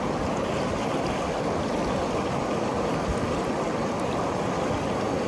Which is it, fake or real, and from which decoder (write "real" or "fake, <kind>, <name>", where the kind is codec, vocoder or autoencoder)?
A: real